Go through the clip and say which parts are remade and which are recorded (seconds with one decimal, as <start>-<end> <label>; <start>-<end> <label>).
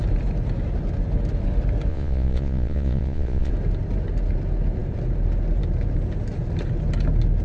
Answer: 0.0-1.9 recorded; 1.9-3.5 remade; 3.5-7.4 recorded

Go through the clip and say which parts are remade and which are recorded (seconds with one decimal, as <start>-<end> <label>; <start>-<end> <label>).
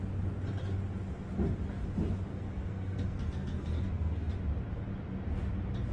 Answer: 0.0-2.3 recorded; 2.3-4.3 remade; 4.3-5.9 recorded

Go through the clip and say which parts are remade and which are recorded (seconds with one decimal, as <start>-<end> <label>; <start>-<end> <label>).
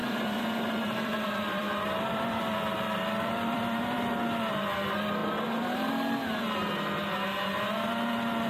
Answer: 0.0-4.1 remade; 4.1-8.5 recorded